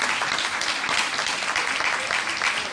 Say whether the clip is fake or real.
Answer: real